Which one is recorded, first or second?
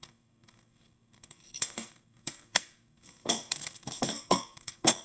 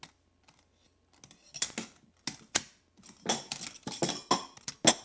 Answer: second